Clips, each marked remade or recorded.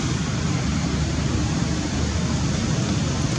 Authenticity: recorded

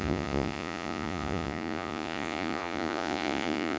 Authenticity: remade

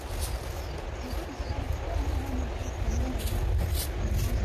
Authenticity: recorded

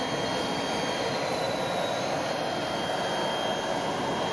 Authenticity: recorded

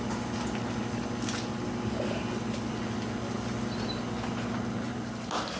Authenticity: recorded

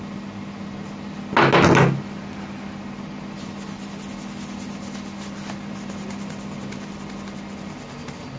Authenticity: recorded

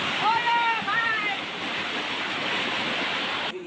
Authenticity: recorded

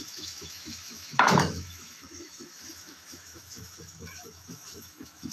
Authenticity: remade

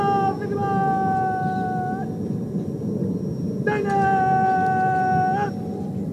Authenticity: recorded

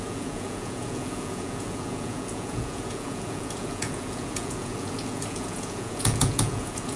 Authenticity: remade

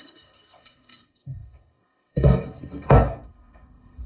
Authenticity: remade